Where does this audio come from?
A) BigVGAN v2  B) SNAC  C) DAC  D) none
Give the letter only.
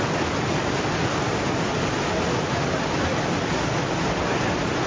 D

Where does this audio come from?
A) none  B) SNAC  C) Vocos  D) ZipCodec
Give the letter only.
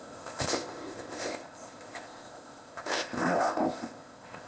D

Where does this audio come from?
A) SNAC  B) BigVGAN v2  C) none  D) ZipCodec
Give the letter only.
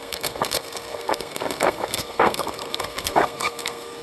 A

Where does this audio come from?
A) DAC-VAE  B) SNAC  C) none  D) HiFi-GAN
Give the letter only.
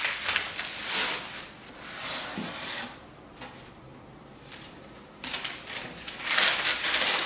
C